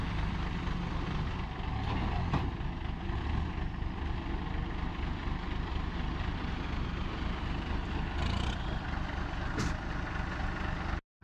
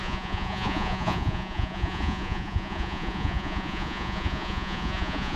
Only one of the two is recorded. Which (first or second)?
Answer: first